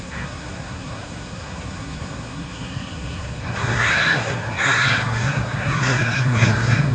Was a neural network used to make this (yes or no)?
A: yes